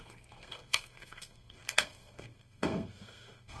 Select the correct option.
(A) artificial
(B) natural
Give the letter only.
A